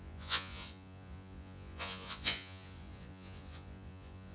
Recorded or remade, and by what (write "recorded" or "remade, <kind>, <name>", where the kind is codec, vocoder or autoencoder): remade, vocoder, Vocos